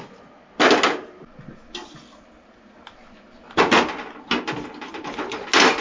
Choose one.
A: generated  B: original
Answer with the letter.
B